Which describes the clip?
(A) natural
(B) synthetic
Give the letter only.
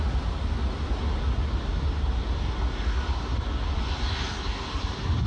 A